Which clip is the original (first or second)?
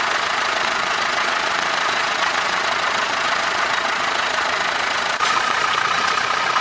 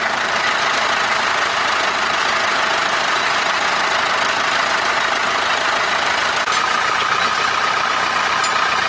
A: second